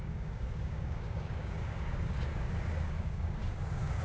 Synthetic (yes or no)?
yes